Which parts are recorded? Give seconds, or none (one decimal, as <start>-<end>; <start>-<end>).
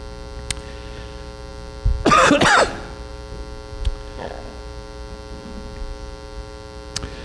0.0-7.2